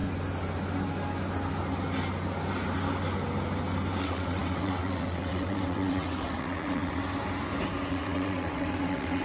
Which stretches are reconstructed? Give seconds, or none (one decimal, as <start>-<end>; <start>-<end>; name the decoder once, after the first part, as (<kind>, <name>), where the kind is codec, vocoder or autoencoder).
4.0-7.0 (vocoder, WaveNeXt); 7.9-9.2